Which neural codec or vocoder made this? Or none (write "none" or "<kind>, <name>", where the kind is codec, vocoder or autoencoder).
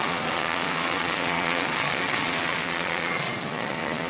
vocoder, Vocos